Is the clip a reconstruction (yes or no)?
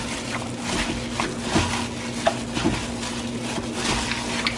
no